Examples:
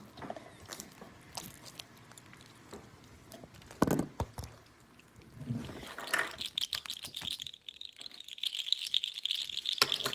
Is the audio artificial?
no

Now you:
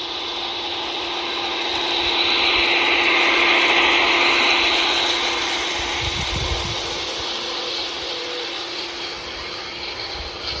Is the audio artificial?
no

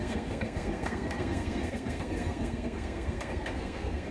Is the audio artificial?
yes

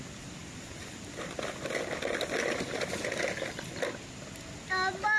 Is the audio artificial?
no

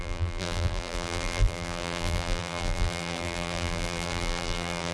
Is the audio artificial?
yes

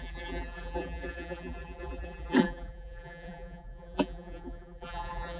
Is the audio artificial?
yes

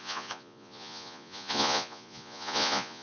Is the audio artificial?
yes